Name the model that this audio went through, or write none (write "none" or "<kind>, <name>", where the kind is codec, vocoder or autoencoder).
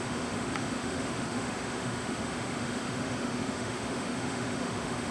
autoencoder, DAC-VAE